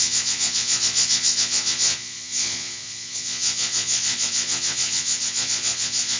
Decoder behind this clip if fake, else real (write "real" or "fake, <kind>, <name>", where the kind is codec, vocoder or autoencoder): fake, vocoder, Vocos